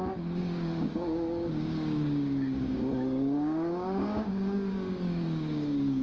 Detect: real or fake fake